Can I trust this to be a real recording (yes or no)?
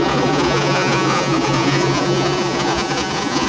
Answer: no